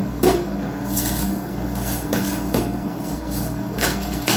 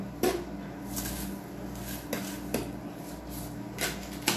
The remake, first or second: first